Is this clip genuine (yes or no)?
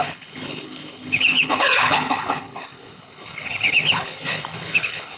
no